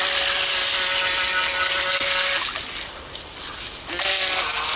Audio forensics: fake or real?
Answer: real